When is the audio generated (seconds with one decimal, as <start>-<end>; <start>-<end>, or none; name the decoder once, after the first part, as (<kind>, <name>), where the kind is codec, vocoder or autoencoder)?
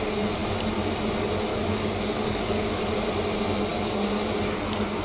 1.5-2.8 (codec, DAC); 3.7-4.3